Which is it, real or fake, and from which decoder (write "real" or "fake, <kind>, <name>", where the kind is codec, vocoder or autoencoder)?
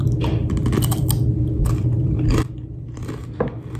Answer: real